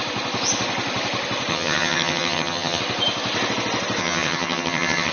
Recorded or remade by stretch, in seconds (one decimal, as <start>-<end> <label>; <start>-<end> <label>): 0.0-1.5 recorded; 1.5-2.8 remade; 2.8-4.0 recorded; 4.0-5.1 remade